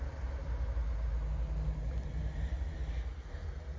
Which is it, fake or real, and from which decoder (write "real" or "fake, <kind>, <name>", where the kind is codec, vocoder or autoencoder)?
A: real